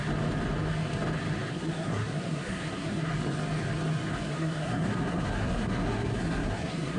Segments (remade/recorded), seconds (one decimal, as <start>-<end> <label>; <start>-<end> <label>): 0.0-1.5 recorded; 1.5-3.1 remade; 3.1-4.3 recorded; 4.3-7.0 remade